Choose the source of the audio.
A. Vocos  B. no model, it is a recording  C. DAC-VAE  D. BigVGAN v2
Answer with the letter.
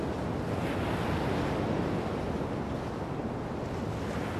B